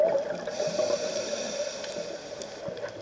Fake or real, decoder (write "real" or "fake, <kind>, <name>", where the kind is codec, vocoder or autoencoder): fake, vocoder, BigVGAN v2